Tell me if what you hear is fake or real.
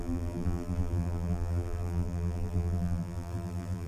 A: fake